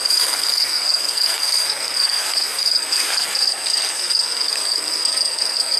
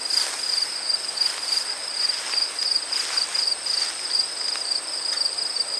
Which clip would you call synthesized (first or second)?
first